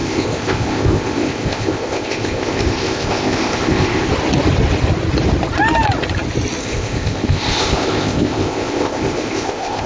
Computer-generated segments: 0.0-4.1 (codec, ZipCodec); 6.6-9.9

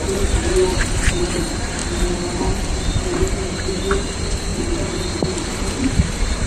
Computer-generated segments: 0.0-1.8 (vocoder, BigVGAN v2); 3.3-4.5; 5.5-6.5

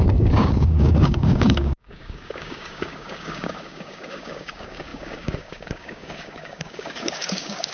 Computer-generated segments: 0.0-7.7 (codec, DAC)